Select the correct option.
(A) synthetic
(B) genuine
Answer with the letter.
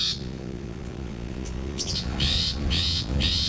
A